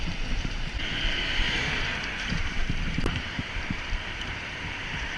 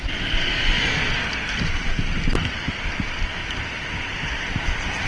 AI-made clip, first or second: first